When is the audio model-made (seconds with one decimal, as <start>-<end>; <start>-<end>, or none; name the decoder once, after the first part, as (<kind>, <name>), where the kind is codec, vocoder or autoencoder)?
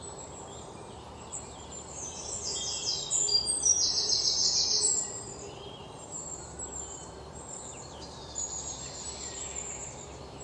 0.0-10.4 (vocoder, BigVGAN v2)